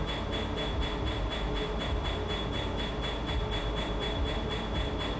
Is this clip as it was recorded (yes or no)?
yes